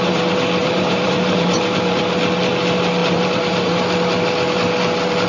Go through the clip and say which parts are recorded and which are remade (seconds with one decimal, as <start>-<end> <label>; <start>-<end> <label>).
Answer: 0.0-0.6 recorded; 0.6-2.0 remade; 2.0-3.0 recorded; 3.0-3.8 remade; 3.8-5.3 recorded